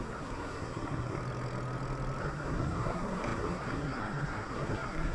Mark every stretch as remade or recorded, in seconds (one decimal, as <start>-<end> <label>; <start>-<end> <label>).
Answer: 0.0-1.2 remade; 1.2-2.2 recorded; 2.2-5.1 remade